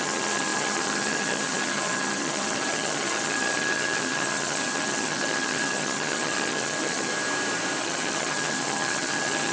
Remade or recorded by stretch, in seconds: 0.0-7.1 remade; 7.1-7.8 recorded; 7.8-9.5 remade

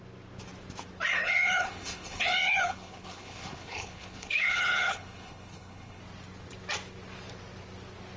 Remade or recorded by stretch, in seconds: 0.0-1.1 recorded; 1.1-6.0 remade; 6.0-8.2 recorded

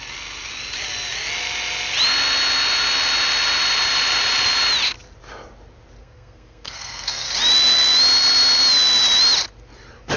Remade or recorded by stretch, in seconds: 0.0-6.0 recorded; 6.0-7.3 remade; 7.3-10.2 recorded

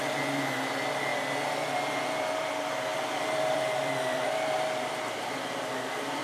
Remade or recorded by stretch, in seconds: 0.0-1.1 remade; 1.1-2.0 recorded; 2.0-6.2 remade

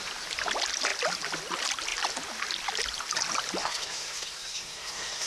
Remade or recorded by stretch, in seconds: 0.0-3.6 recorded; 3.6-5.3 remade